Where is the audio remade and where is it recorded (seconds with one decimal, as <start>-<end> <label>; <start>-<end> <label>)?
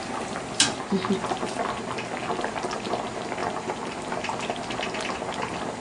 0.0-1.6 remade; 1.6-2.5 recorded; 2.5-5.8 remade